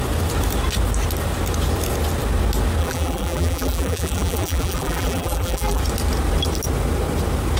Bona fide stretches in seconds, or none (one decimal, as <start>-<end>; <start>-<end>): 0.0-2.8; 5.8-7.6